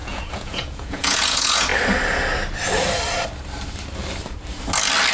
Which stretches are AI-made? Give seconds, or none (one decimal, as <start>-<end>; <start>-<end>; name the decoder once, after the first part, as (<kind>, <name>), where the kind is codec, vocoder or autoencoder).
0.0-1.7 (vocoder, Vocos)